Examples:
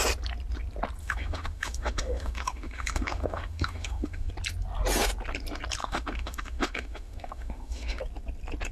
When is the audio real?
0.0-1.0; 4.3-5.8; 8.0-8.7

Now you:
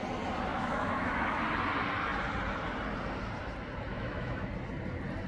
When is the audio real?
0.0-0.5; 1.4-3.9; 4.5-5.3

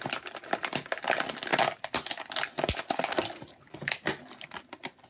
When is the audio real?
0.0-5.1